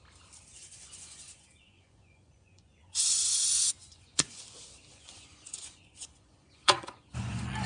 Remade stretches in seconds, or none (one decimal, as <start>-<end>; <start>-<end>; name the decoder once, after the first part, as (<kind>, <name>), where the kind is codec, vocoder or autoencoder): 0.5-3.2 (vocoder, Vocos); 3.8-4.4; 4.9-7.7